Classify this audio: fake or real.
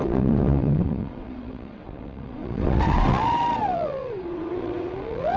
fake